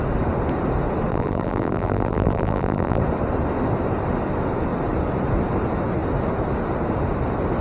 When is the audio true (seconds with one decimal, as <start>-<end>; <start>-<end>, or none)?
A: 0.0-1.1; 3.0-7.6